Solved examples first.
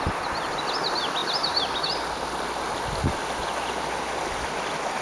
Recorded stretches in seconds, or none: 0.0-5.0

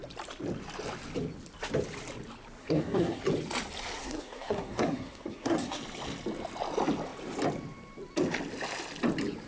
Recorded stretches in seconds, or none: 0.0-2.6; 3.2-4.0; 5.8-9.5

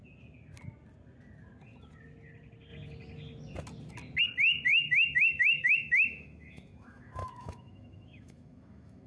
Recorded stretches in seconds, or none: 0.0-4.7